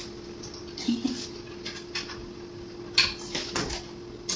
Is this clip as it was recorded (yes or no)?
yes